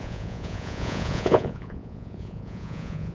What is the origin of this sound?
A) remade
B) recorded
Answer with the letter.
A